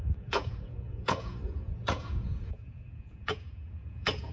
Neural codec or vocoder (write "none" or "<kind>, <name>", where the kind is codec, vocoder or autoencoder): vocoder, Vocos